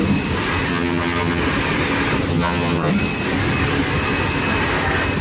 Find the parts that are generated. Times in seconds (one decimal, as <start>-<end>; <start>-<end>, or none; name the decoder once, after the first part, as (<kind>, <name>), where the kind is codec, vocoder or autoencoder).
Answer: 0.7-1.4 (vocoder, HiFi-GAN); 2.3-2.9